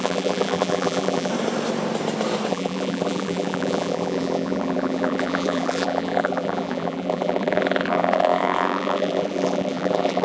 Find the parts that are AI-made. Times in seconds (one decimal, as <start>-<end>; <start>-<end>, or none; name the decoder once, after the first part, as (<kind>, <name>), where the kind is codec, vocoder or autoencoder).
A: 0.0-1.3 (vocoder, BigVGAN v2); 2.5-10.2